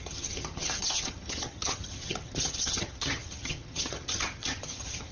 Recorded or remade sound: remade